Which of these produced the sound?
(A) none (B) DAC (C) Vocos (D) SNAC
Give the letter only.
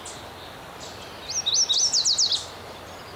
A